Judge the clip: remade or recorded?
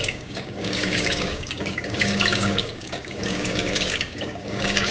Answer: remade